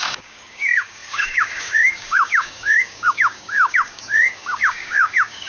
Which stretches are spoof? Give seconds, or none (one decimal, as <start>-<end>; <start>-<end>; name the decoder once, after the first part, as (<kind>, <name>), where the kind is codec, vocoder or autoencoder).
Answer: 0.0-5.5 (codec, DAC)